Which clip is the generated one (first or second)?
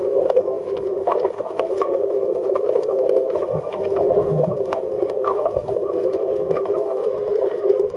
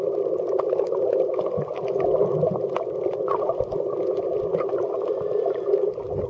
first